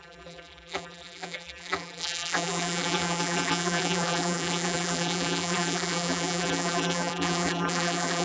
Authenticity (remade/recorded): remade